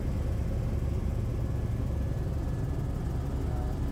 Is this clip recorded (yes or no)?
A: yes